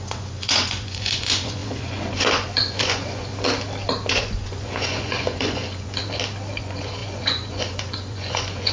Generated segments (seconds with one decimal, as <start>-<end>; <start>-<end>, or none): 0.0-3.3; 4.1-6.0; 6.6-8.7